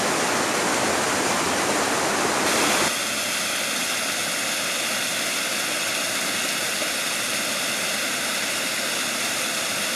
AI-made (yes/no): no